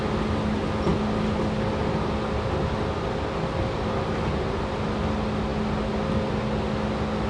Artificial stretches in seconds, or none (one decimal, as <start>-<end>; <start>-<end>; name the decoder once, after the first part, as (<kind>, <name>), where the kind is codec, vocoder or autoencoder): none